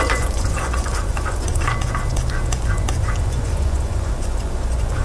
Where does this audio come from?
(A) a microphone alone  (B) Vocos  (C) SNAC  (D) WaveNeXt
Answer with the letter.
B